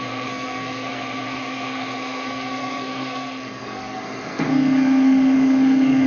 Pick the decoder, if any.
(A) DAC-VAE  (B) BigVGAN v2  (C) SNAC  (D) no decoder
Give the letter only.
C